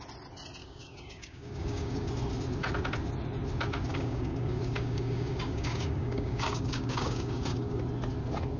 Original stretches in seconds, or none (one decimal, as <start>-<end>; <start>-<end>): 0.0-0.6; 2.1-3.9; 7.8-8.6

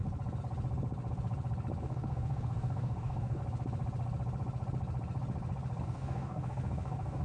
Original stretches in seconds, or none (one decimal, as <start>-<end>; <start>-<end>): 0.0-1.8; 3.4-5.8